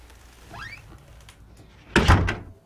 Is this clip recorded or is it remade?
recorded